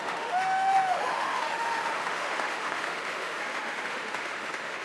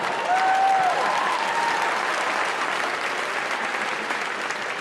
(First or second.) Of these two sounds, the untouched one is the second